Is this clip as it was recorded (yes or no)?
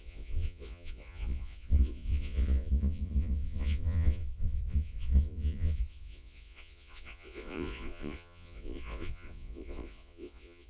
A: no